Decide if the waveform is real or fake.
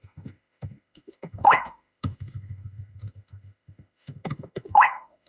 fake